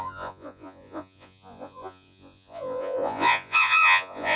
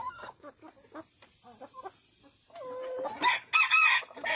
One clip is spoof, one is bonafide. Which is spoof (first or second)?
first